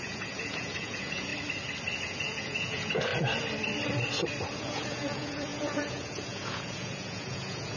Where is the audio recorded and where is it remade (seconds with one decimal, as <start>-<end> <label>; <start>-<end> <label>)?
0.0-1.3 remade; 1.3-2.0 recorded; 2.0-3.1 remade; 3.1-4.6 recorded; 4.6-7.8 remade